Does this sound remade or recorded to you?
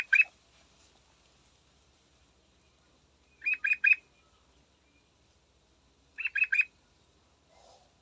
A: recorded